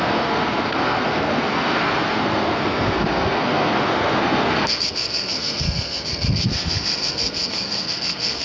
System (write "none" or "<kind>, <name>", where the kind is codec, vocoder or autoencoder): codec, SNAC